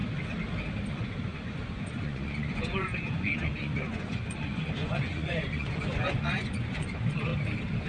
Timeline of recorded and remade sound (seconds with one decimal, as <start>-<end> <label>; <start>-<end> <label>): 0.0-0.9 recorded; 0.9-7.3 remade; 7.3-7.9 recorded